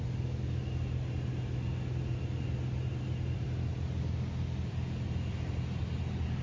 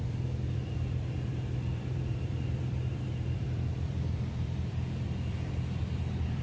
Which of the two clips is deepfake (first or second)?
second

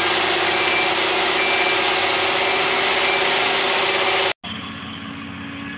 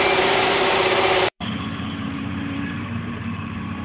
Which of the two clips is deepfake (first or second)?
second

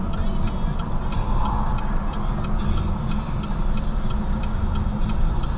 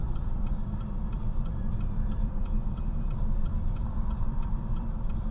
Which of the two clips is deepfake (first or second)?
second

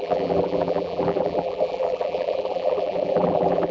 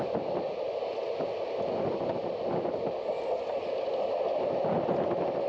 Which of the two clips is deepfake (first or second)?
first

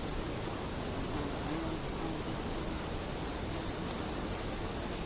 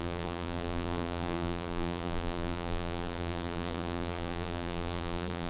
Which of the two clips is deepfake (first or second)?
second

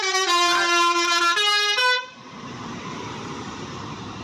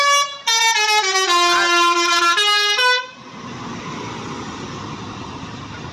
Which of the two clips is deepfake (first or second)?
first